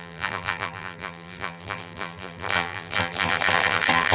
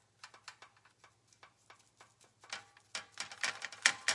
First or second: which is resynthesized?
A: first